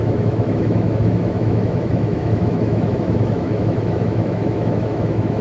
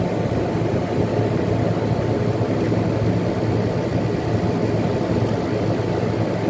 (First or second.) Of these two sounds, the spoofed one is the first